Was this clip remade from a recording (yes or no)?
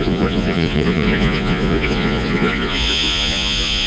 yes